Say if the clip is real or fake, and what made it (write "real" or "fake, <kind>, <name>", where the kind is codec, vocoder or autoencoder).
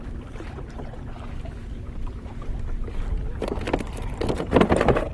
real